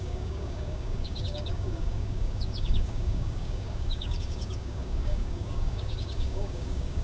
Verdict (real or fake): fake